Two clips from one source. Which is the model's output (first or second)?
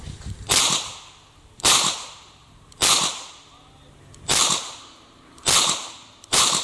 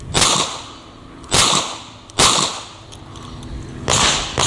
first